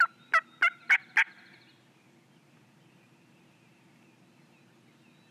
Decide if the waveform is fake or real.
real